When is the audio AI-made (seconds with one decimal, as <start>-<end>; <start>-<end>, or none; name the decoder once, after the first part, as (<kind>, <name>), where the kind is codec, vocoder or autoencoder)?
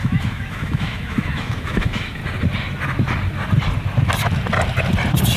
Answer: 0.0-2.2 (autoencoder, DAC-VAE)